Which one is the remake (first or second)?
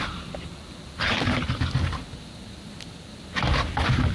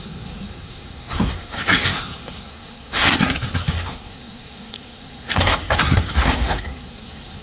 second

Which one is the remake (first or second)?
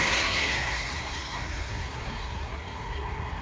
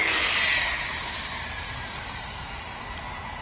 first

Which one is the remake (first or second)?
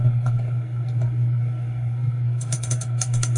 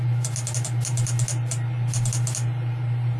first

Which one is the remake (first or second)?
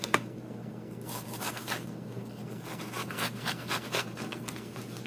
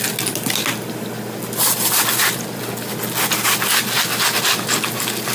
first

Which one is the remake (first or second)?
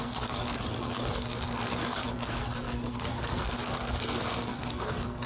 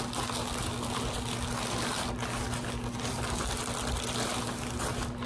first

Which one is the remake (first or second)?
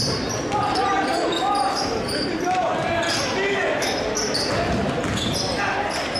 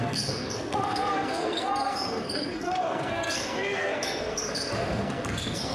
second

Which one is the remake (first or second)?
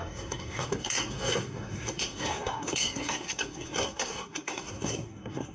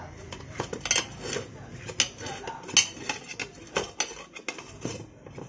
first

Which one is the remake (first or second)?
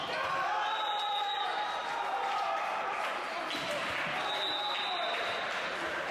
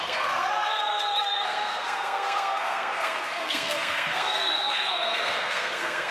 second